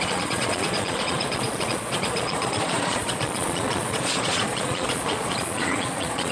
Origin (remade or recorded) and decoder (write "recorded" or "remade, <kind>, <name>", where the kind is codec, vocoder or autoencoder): remade, vocoder, Vocos